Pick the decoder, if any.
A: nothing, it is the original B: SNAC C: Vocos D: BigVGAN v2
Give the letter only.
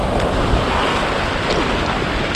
A